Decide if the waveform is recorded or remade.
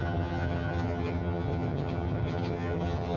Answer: remade